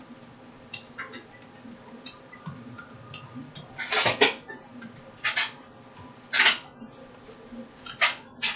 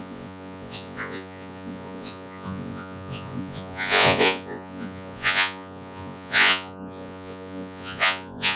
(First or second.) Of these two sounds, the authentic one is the first